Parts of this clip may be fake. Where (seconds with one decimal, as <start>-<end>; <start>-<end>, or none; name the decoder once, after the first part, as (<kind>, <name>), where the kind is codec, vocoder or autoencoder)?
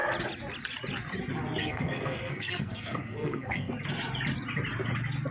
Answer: 1.6-3.7 (codec, SNAC)